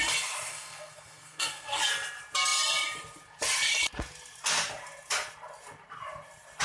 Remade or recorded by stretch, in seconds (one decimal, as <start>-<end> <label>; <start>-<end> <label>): 0.0-0.5 recorded; 0.5-1.8 remade; 1.8-6.6 recorded